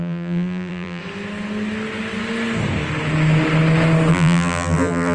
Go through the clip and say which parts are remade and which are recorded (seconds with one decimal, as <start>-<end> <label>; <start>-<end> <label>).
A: 0.0-1.0 remade; 1.0-4.1 recorded; 4.1-5.1 remade